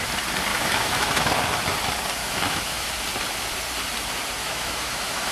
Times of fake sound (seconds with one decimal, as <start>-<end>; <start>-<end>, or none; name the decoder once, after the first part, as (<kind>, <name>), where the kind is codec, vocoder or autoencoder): 0.5-1.3 (autoencoder, DAC-VAE); 2.2-2.9; 4.4-5.3